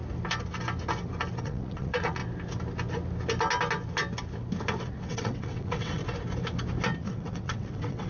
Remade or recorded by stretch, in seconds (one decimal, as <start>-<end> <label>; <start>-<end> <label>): 0.0-1.4 recorded; 1.4-2.2 remade; 2.2-4.8 recorded; 4.8-6.0 remade; 6.0-7.0 recorded; 7.0-8.1 remade